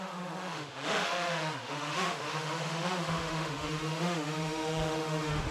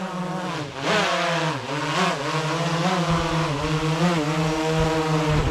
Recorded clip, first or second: second